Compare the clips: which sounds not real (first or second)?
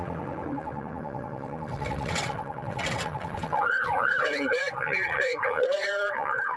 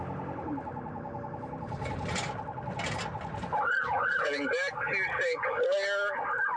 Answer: first